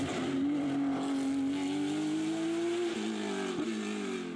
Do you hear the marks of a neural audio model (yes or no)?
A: no